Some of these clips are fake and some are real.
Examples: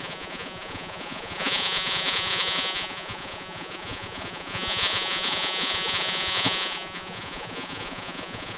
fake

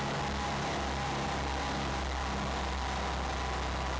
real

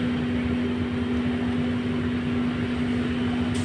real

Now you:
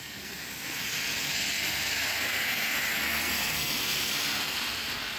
fake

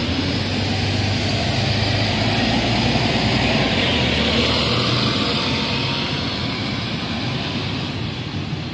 real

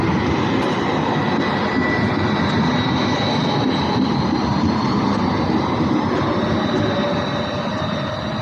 real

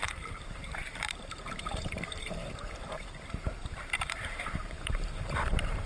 fake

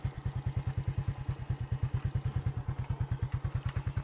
real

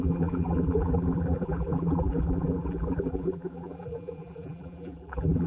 fake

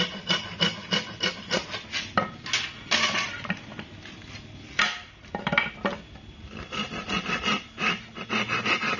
real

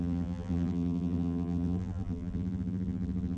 fake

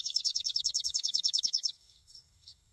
fake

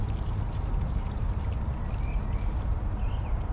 real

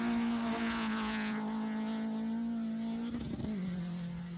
real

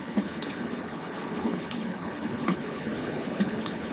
fake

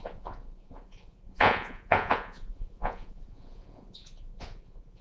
fake